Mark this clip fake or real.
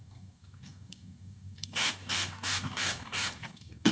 fake